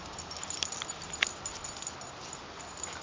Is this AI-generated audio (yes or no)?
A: no